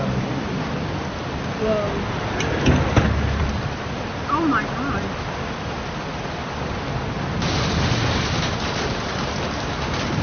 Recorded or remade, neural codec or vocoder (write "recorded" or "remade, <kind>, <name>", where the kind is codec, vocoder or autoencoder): recorded